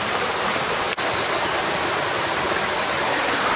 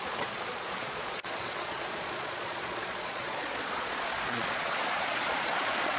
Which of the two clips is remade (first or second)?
second